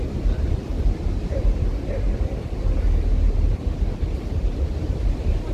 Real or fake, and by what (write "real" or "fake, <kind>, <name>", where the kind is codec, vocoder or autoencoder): real